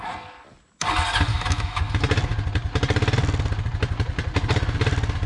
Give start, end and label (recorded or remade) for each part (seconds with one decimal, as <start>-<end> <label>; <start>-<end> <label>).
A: 0.0-1.3 recorded; 1.3-1.8 remade; 1.8-5.3 recorded